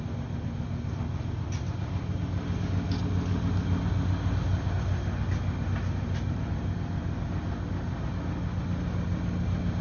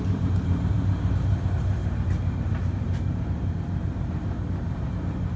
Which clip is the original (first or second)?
first